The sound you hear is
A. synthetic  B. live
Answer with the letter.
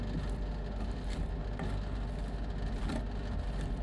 B